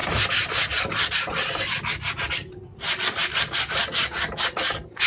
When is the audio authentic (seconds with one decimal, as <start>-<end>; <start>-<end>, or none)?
0.0-5.1